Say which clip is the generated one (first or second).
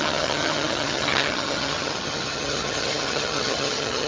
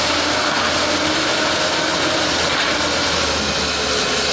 first